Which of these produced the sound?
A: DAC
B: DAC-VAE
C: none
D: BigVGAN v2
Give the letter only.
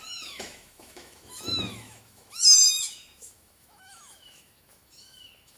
B